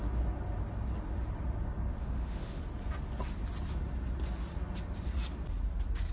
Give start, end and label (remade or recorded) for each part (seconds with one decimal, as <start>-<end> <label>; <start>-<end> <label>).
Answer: 0.0-2.0 recorded; 2.0-2.6 remade; 2.6-6.1 recorded